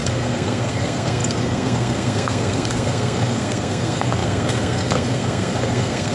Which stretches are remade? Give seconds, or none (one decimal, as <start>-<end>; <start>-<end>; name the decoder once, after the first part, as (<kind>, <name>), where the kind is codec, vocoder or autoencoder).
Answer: 0.0-6.1 (codec, SNAC)